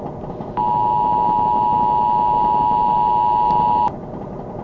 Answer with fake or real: real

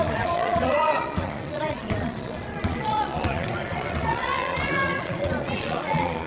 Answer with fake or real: fake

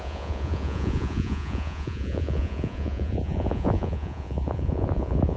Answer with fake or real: fake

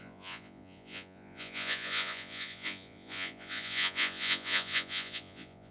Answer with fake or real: fake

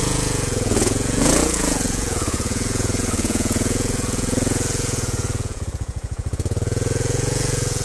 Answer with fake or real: fake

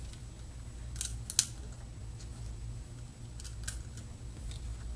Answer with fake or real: real